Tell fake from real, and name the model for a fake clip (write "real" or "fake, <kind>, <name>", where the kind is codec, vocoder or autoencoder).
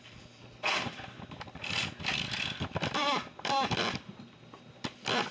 fake, vocoder, BigVGAN v2